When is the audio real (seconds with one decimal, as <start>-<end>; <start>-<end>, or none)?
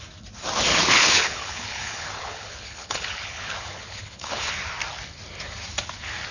0.0-0.7; 4.5-6.3